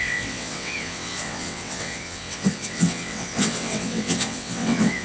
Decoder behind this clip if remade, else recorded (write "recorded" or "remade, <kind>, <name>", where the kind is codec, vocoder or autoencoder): remade, vocoder, WaveNeXt